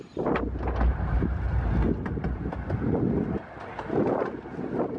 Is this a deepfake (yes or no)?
no